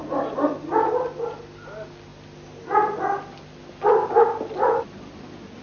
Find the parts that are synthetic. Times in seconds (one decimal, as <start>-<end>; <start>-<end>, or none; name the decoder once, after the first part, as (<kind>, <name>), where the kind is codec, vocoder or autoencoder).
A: none